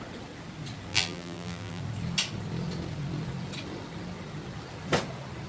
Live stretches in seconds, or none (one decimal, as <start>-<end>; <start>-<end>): 0.0-0.9; 1.8-5.5